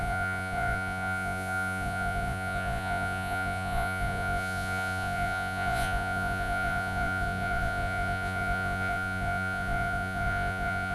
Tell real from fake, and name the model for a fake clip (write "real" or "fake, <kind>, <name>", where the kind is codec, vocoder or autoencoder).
fake, vocoder, Vocos